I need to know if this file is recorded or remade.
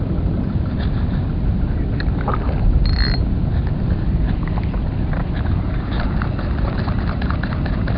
recorded